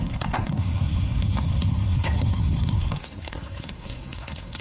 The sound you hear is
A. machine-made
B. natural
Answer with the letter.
A